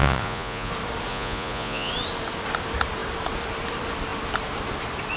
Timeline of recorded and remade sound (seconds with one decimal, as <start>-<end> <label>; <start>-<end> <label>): 0.0-0.7 remade; 0.7-1.1 recorded; 1.1-1.9 remade; 1.9-5.2 recorded